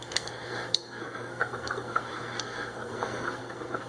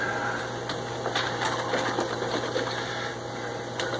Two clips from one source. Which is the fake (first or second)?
first